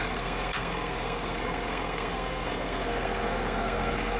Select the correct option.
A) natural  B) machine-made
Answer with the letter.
B